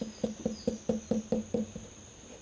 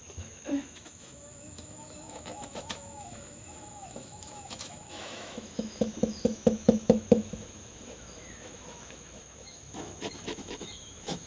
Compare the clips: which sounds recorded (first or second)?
first